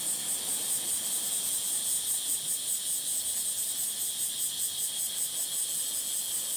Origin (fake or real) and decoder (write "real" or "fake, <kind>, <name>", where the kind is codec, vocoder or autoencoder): real